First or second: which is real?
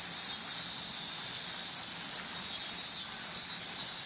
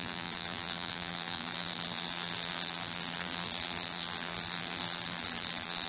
first